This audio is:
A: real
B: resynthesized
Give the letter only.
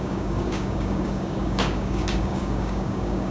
B